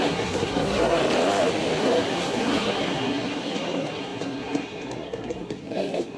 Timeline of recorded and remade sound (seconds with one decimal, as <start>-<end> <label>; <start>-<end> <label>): 0.0-1.0 remade; 1.0-1.8 recorded; 1.8-6.2 remade